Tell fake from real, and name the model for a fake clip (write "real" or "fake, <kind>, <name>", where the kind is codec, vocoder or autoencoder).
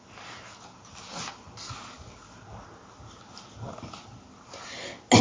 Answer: real